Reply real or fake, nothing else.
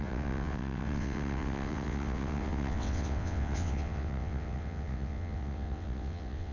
fake